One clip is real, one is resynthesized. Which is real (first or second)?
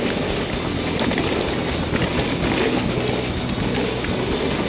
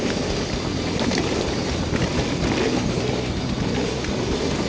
first